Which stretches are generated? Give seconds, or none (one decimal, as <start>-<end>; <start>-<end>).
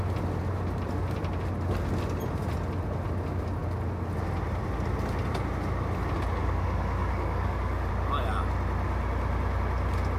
6.4-7.9